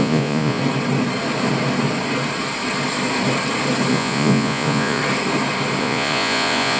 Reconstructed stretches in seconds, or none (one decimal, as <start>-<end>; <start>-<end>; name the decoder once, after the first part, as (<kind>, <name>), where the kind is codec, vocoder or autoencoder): 0.0-0.6 (vocoder, Vocos); 3.9-5.0; 5.8-6.8